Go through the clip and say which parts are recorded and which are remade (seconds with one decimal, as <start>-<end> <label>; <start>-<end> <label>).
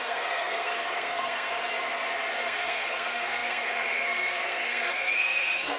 0.0-1.6 remade; 1.6-2.4 recorded; 2.4-5.8 remade